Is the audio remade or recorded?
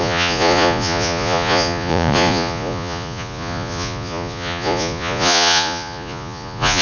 remade